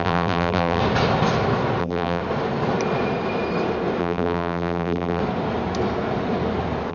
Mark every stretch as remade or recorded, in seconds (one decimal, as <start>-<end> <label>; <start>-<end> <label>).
0.0-0.8 remade; 0.8-1.8 recorded; 1.8-2.2 remade; 2.2-4.0 recorded; 4.0-5.2 remade; 5.2-6.9 recorded